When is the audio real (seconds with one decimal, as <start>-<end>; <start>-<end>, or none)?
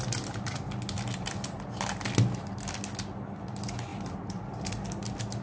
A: 0.0-3.9; 4.7-5.4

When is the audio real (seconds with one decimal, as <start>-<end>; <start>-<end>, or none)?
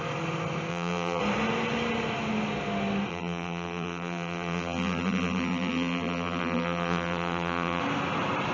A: 0.0-0.7; 1.2-3.1; 7.8-8.5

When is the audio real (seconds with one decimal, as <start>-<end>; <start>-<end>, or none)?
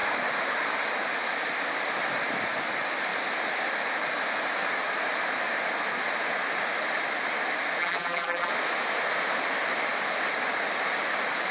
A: 0.0-7.8; 8.5-11.5